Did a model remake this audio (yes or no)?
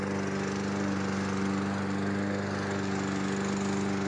no